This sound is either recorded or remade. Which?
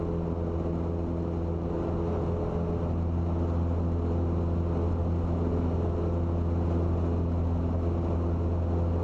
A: recorded